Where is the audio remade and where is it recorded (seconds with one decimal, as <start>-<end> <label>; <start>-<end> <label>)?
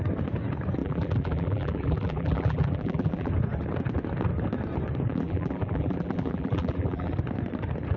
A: 0.0-0.8 recorded; 0.8-3.3 remade; 3.3-5.1 recorded; 5.1-7.1 remade; 7.1-8.0 recorded